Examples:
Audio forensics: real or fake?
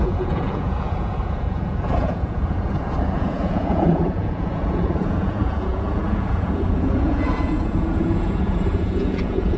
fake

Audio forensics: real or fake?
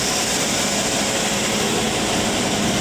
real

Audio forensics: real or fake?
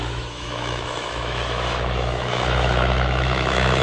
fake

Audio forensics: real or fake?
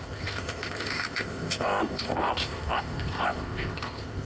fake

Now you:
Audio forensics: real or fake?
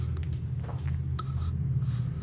real